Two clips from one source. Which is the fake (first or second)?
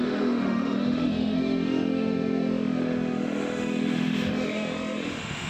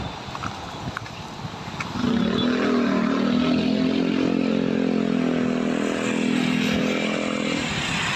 first